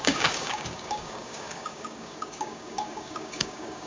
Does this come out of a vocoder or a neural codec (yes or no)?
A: yes